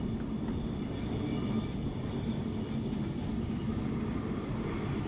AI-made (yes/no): no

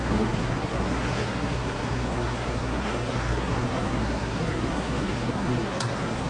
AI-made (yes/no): yes